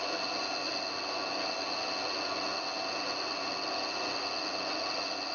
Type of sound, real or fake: real